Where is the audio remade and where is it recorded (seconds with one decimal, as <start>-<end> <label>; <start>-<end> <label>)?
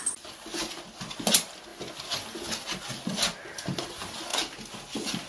0.0-1.7 recorded; 1.7-2.8 remade; 2.8-5.3 recorded